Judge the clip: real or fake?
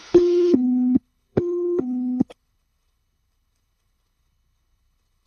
fake